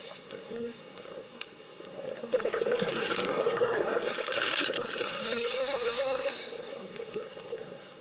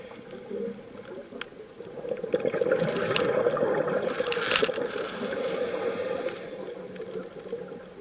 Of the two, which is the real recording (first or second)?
second